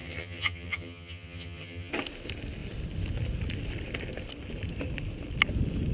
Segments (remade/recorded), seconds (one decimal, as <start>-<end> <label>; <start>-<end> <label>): 0.0-1.9 remade; 1.9-5.9 recorded